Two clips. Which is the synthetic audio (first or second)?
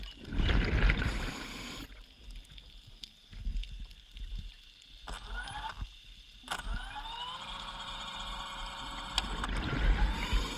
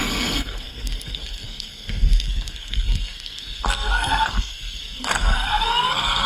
second